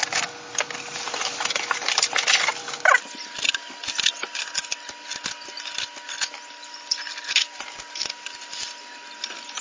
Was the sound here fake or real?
real